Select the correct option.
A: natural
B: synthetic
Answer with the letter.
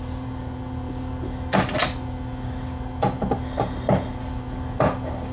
A